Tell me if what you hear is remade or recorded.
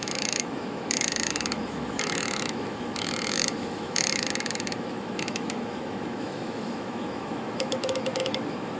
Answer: remade